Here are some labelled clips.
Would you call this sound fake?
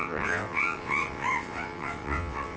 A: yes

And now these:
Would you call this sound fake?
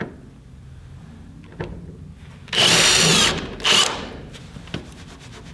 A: no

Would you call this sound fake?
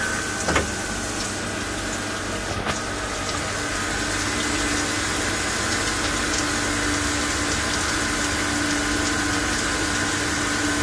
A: no